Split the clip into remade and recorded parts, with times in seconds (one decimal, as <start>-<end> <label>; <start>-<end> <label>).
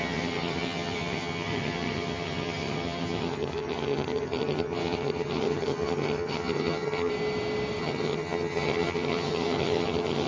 0.0-7.1 remade; 7.1-7.8 recorded; 7.8-10.3 remade